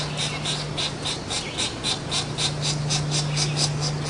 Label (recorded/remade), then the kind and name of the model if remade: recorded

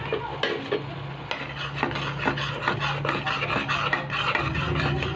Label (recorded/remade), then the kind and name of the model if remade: recorded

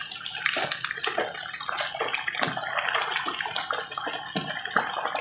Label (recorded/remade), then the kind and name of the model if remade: recorded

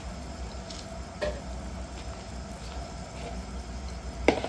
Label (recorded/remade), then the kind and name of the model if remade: recorded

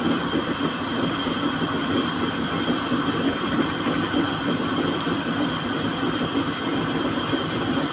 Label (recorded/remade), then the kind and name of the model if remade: remade, vocoder, BigVGAN v2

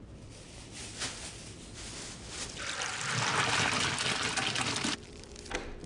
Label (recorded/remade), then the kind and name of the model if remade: recorded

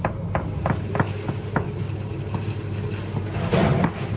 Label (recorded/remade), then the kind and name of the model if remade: recorded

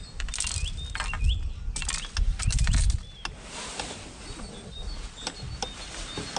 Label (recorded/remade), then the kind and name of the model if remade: recorded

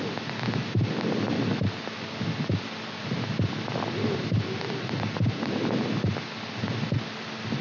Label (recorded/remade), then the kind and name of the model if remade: recorded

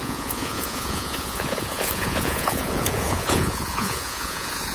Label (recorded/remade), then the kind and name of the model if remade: remade, vocoder, Vocos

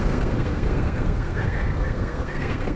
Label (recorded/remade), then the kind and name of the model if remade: remade, codec, SNAC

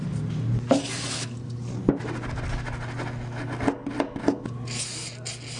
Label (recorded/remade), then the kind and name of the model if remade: recorded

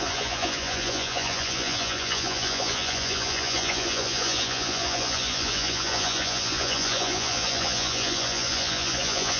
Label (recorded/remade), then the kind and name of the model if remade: remade, vocoder, Vocos